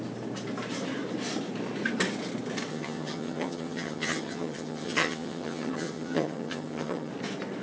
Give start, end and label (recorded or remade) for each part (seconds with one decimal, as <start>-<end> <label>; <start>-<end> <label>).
0.0-2.7 recorded; 2.7-7.1 remade; 7.1-7.6 recorded